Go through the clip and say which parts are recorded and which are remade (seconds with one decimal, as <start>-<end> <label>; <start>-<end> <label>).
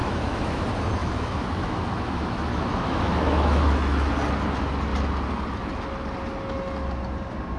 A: 0.0-0.6 remade; 0.6-1.0 recorded; 1.0-4.1 remade; 4.1-7.6 recorded